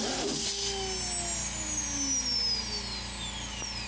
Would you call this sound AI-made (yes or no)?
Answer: no